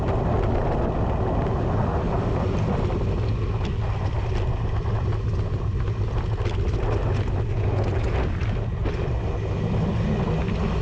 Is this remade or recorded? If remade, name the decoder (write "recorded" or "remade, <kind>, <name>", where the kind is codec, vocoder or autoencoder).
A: recorded